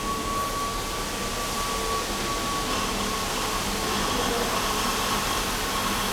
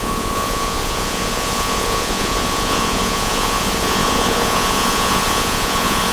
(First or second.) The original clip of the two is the first